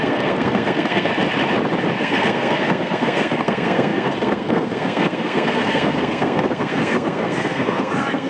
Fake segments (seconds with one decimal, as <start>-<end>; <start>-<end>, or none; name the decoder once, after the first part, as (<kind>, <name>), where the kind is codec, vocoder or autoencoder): 0.0-1.1 (codec, SNAC); 2.0-8.3